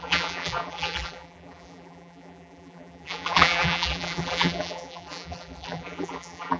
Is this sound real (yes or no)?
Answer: no